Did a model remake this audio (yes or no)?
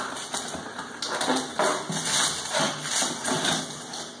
no